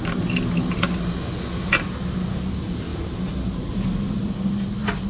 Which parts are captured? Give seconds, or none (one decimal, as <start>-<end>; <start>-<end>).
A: 0.0-5.1